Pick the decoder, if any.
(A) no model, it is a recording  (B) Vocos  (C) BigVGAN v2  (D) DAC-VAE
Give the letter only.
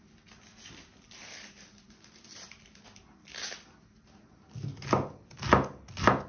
A